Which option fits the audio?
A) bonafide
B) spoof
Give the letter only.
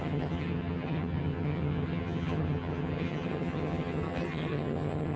B